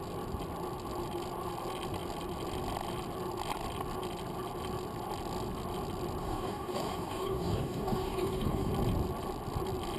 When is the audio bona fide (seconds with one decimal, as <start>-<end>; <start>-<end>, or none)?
0.0-6.2; 8.7-10.0